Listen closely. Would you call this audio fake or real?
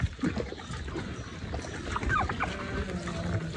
real